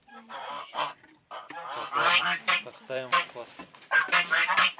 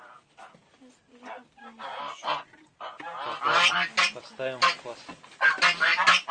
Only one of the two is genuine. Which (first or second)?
second